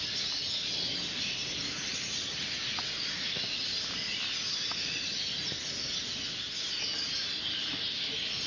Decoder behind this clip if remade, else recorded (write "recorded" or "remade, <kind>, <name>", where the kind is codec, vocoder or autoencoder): recorded